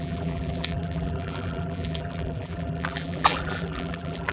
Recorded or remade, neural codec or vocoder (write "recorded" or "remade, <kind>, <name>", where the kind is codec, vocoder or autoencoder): remade, vocoder, BigVGAN v2